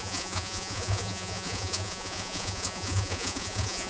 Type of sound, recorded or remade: remade